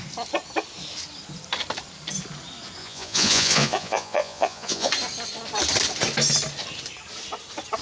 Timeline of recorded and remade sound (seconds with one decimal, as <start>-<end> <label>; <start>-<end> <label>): 0.0-2.8 recorded; 2.8-4.9 remade; 4.9-7.8 recorded